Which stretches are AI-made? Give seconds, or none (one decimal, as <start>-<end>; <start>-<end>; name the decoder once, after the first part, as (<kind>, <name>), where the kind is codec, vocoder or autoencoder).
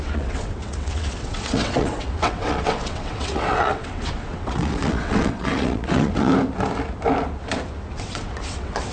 0.0-6.3 (vocoder, WaveNeXt); 7.9-8.9